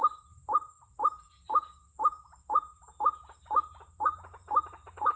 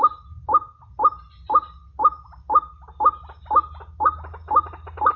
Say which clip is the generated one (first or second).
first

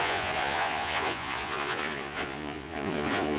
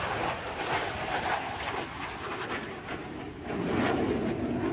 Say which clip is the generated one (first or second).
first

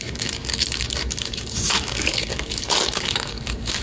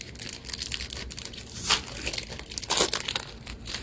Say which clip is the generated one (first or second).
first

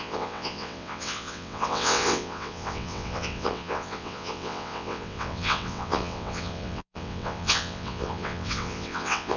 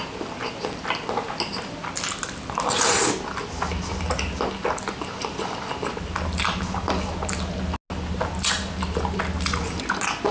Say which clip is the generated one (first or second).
first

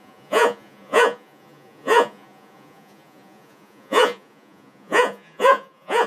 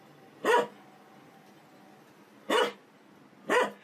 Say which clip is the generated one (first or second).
first